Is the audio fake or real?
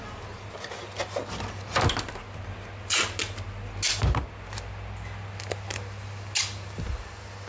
real